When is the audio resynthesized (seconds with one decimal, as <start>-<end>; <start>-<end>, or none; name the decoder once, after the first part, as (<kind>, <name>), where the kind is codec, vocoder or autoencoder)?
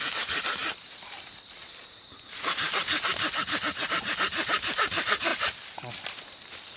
none